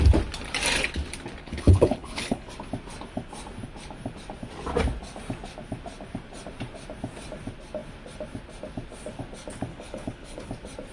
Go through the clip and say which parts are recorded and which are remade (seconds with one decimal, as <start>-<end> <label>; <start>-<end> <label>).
0.0-1.4 recorded; 1.4-2.5 remade; 2.5-9.7 recorded; 9.7-10.5 remade; 10.5-10.9 recorded